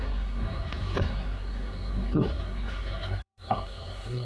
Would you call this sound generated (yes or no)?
yes